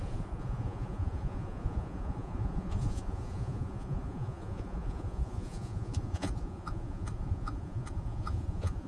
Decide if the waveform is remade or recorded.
remade